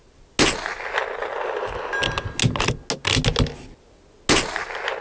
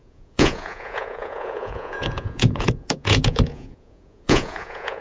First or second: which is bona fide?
first